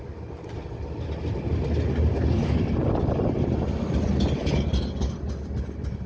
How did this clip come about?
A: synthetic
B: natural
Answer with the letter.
B